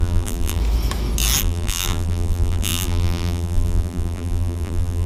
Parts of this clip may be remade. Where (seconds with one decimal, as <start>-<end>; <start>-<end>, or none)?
0.0-0.6; 1.4-5.1

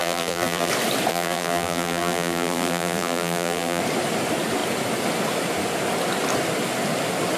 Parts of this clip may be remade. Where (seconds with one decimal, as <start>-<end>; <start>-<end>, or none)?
0.0-0.7; 1.1-3.8